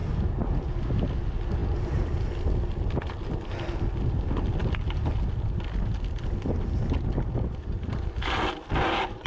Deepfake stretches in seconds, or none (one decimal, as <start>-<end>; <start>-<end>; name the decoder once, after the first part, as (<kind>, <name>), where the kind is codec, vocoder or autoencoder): none